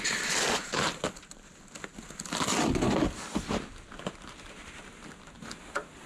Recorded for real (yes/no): yes